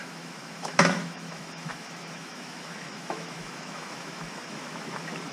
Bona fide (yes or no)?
no